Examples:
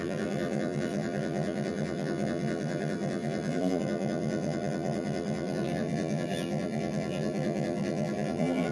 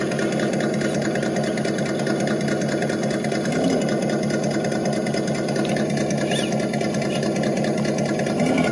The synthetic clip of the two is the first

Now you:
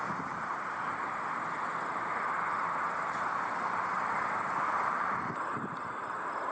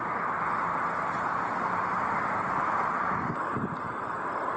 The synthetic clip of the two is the first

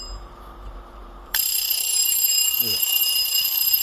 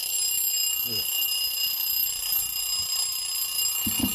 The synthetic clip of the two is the first